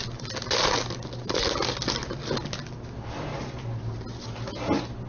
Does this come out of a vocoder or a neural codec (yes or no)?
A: no